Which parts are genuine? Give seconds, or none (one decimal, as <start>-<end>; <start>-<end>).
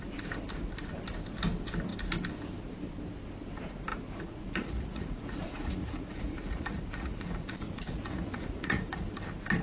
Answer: 0.0-3.9; 9.0-9.6